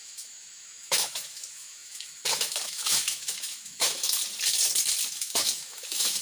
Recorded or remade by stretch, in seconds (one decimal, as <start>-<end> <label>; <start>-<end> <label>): 0.0-4.2 remade; 4.2-5.1 recorded; 5.1-6.2 remade